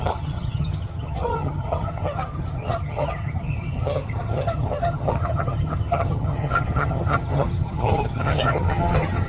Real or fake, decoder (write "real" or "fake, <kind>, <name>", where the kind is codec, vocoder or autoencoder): fake, vocoder, HiFi-GAN